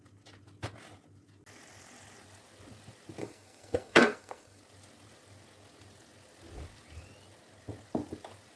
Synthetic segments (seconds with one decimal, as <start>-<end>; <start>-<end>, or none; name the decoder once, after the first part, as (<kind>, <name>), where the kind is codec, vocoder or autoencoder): 3.2-4.6 (codec, SNAC)